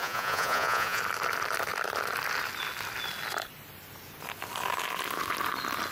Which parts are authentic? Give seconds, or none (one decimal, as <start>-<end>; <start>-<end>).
1.0-5.9